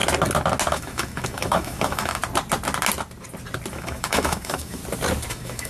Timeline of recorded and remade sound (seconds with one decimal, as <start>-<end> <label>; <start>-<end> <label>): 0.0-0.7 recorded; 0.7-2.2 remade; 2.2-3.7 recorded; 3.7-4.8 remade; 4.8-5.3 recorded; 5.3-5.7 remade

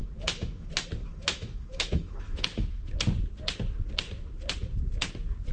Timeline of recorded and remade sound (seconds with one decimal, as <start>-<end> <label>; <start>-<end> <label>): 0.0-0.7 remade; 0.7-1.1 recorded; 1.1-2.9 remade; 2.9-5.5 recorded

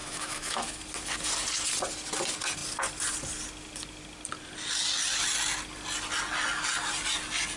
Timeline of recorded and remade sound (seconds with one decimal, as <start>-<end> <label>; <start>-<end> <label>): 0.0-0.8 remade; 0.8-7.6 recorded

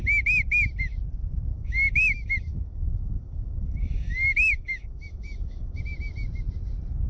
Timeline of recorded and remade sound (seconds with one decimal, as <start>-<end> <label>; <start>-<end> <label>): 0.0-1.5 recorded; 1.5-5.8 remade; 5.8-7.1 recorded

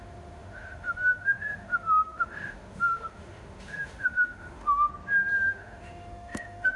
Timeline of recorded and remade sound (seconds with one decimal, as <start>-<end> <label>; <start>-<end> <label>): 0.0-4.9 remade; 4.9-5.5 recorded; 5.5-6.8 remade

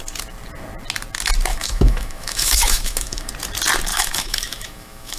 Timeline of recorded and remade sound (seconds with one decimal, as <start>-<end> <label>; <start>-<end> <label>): 0.0-1.5 recorded; 1.5-3.3 remade; 3.3-3.9 recorded; 3.9-5.2 remade